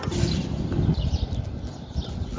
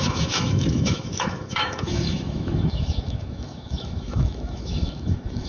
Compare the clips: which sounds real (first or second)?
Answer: first